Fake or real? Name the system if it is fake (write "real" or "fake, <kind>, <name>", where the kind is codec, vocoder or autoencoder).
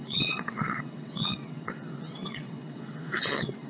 fake, vocoder, WaveNeXt